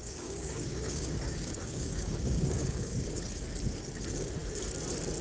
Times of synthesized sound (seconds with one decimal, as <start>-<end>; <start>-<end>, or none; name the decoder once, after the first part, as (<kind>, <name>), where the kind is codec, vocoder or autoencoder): 0.0-3.1 (codec, DAC)